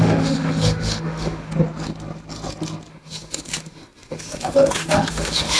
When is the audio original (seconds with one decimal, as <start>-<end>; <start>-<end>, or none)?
1.5-2.9